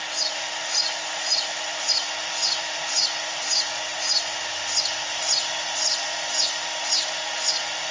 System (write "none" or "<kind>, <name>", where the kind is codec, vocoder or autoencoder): vocoder, BigVGAN v2